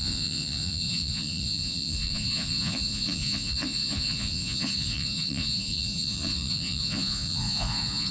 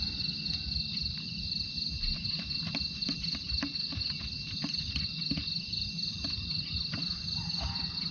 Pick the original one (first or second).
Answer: second